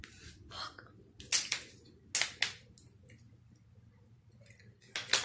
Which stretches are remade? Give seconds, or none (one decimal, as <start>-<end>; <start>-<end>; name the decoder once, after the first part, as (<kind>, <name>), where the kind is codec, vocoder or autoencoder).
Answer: none